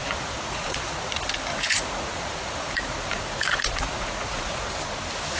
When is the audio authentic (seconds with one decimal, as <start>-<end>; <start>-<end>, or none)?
1.1-1.5; 4.7-5.4